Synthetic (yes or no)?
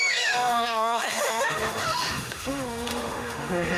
yes